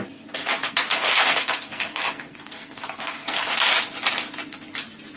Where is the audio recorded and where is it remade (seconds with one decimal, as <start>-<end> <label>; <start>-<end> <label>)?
0.0-0.4 recorded; 0.4-3.5 remade; 3.5-5.2 recorded